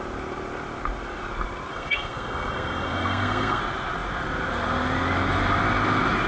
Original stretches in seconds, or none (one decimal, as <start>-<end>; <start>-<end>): 0.0-1.7; 3.6-6.3